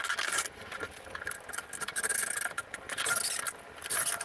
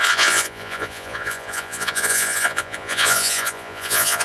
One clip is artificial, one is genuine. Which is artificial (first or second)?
second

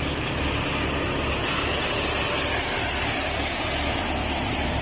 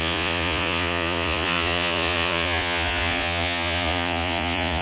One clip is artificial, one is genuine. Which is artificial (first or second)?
second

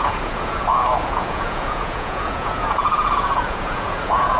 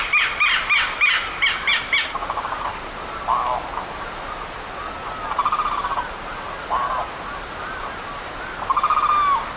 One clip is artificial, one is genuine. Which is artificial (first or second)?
first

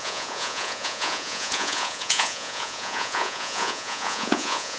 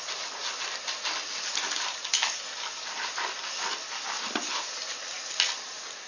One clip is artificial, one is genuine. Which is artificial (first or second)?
first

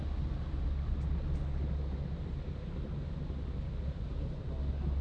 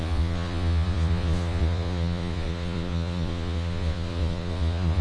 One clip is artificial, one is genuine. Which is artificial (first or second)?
second